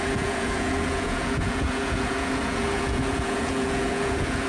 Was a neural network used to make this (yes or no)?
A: yes